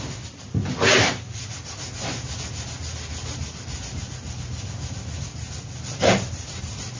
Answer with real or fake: real